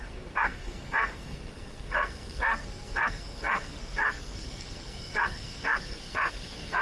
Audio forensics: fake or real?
fake